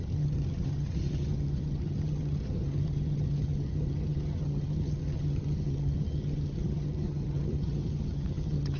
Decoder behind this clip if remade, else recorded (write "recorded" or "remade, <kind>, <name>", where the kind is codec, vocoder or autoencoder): remade, vocoder, HiFi-GAN